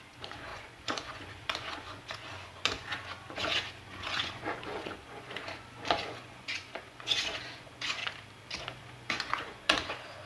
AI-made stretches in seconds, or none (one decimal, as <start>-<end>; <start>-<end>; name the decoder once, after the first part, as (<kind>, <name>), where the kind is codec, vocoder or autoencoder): 0.0-8.0 (vocoder, Vocos); 8.6-10.3